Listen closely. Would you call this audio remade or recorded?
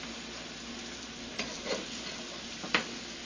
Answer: recorded